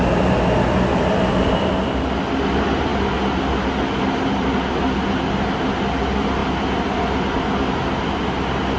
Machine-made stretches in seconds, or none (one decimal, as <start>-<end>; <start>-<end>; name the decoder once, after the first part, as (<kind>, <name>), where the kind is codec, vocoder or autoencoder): none